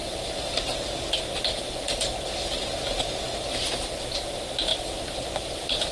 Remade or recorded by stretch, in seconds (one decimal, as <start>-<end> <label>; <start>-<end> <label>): 0.0-4.7 recorded; 4.7-5.9 remade